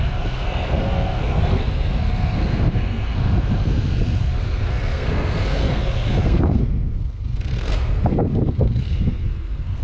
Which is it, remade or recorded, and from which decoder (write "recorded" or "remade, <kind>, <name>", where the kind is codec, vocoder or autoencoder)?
remade, codec, SNAC